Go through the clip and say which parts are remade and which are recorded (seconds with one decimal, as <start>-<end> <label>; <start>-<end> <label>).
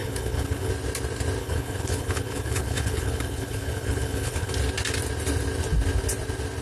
0.0-0.7 remade; 0.7-1.4 recorded; 1.4-4.5 remade; 4.5-6.6 recorded